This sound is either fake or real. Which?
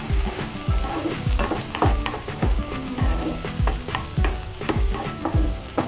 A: fake